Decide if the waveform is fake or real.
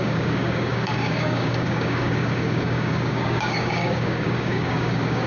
fake